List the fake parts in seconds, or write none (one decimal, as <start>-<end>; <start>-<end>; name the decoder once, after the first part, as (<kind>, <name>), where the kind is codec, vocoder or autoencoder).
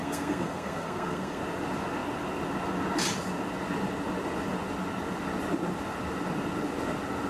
0.0-1.4 (codec, SNAC)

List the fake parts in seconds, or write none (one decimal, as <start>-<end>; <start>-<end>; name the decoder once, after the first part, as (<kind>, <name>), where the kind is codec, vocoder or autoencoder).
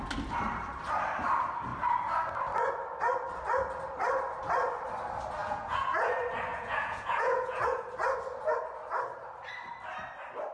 5.4-6.1 (vocoder, Vocos); 6.5-7.9